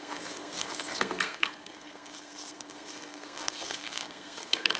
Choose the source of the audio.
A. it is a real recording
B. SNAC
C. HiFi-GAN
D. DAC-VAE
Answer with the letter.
B